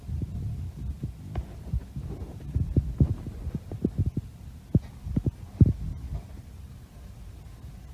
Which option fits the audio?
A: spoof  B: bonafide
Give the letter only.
B